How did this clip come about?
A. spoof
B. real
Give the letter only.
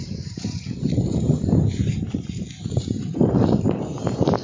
A